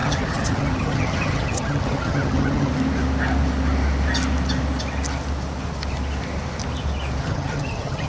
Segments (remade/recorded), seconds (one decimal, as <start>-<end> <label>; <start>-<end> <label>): 0.0-2.7 remade; 2.7-7.2 recorded; 7.2-8.1 remade